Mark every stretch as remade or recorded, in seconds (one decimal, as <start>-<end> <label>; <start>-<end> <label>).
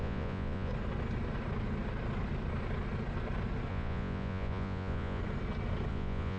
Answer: 0.0-0.7 remade; 0.7-3.7 recorded; 3.7-5.2 remade; 5.2-5.9 recorded; 5.9-6.4 remade